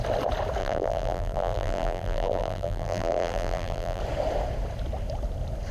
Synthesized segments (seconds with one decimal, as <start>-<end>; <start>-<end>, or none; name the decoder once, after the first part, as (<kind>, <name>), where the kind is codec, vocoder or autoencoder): 0.6-4.0 (vocoder, BigVGAN v2)